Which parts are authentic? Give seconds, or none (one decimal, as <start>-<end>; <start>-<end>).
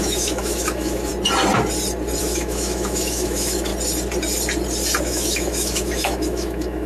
1.1-2.2; 3.7-5.0